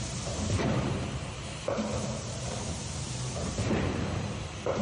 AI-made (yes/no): yes